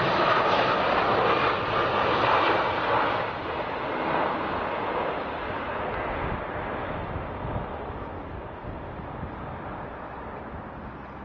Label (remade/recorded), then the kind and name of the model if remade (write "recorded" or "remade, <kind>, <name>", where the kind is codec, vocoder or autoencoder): recorded